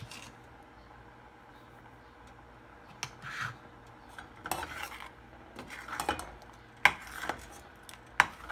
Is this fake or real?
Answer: real